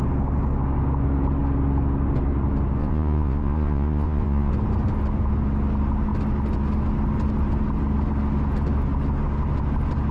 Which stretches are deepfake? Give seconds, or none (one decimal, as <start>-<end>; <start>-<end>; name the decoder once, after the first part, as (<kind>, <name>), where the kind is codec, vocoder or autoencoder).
2.8-4.5 (vocoder, Vocos)